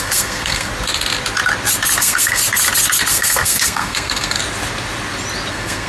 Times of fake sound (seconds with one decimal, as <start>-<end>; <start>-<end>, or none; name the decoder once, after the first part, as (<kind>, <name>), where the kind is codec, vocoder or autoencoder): 0.0-0.7 (codec, SNAC); 2.0-2.4; 3.1-4.4; 5.5-5.9